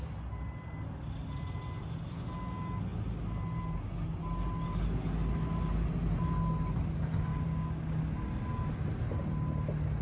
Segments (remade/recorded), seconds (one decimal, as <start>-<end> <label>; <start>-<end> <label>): 0.0-7.3 recorded; 7.3-8.0 remade; 8.0-10.0 recorded